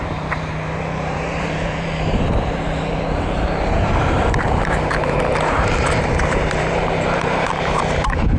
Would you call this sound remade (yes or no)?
yes